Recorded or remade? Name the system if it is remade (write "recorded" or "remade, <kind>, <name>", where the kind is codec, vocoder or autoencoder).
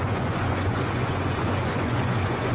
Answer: remade, vocoder, Vocos